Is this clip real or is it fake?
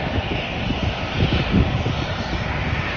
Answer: real